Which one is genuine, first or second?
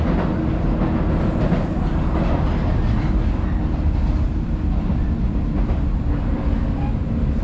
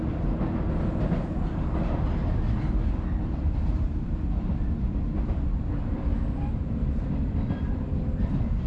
first